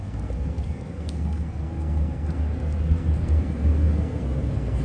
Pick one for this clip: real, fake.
fake